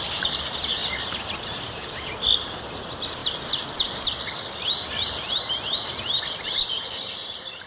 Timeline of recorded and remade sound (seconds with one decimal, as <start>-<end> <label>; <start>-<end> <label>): 0.0-7.7 remade